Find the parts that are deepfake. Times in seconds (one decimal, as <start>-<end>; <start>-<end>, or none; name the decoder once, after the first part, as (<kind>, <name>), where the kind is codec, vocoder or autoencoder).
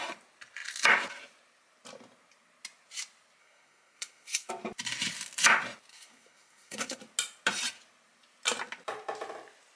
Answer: 3.4-4.5 (codec, SNAC); 5.9-7.0